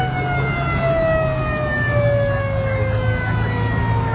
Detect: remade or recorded recorded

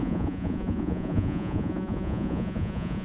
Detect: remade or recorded remade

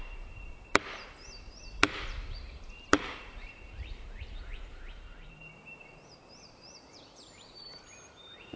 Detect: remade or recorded remade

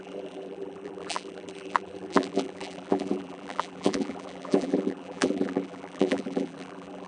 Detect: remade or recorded remade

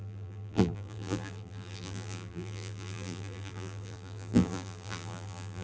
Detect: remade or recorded remade